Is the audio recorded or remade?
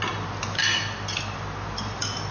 recorded